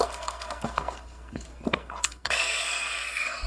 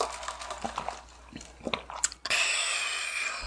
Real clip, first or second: second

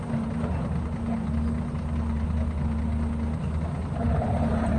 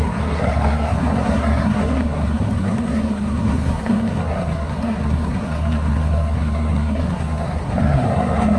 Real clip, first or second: first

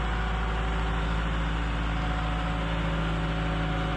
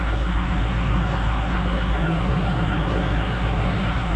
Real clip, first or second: first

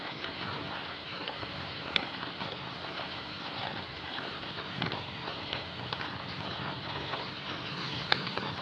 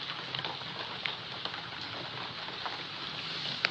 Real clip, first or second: second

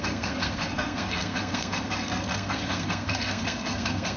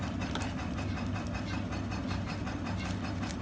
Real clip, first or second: second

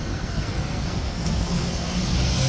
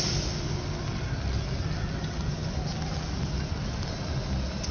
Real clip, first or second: second